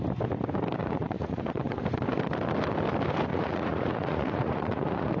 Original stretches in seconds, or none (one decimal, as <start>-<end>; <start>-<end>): 0.0-0.8; 1.8-3.3